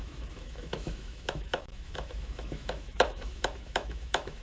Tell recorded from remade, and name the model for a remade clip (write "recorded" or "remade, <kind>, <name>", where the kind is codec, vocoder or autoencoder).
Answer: remade, autoencoder, DAC-VAE